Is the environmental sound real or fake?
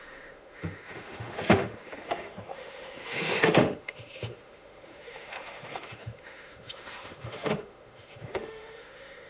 fake